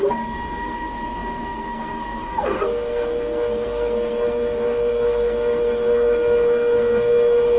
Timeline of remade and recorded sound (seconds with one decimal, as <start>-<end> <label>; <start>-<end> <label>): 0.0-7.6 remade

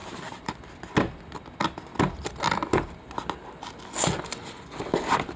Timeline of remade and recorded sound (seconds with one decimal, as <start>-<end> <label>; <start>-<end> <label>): 0.0-0.6 remade; 0.6-5.4 recorded

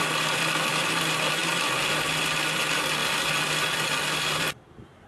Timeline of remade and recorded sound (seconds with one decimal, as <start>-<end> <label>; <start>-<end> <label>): 0.0-5.1 recorded

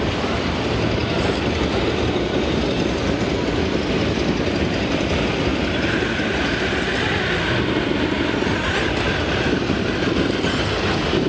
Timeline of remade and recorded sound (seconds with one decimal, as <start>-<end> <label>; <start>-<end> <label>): 0.0-11.3 recorded

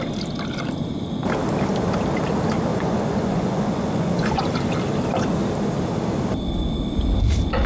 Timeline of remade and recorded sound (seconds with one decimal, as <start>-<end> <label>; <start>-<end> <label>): 0.0-2.7 recorded; 2.7-4.4 remade; 4.4-7.7 recorded

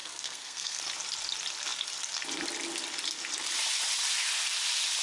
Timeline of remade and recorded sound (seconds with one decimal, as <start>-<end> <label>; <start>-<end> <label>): 0.0-0.8 remade; 0.8-5.0 recorded

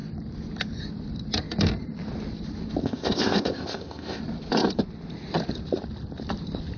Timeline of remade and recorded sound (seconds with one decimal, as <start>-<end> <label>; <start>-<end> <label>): 0.0-2.8 recorded; 2.8-4.2 remade; 4.2-6.8 recorded

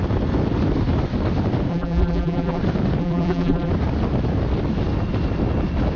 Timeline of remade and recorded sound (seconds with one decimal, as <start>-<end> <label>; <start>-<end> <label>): 0.0-1.7 recorded; 1.7-2.6 remade; 2.6-3.0 recorded; 3.0-3.7 remade; 3.7-6.0 recorded